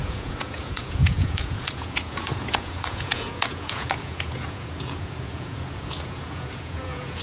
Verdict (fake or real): fake